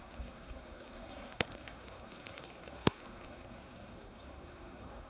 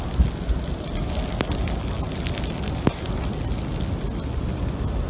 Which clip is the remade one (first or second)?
first